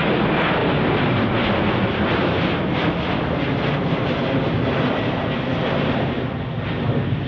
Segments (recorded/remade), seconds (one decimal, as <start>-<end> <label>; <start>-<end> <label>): 0.0-7.3 recorded